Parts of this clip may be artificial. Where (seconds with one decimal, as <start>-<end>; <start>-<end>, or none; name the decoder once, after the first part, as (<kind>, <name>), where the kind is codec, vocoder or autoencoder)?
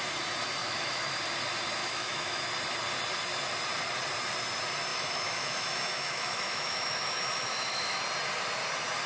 0.6-1.2 (autoencoder, DAC-VAE); 1.8-2.4; 4.9-8.0